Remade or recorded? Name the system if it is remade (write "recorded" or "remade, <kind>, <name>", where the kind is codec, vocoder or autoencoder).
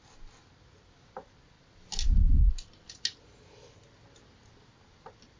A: recorded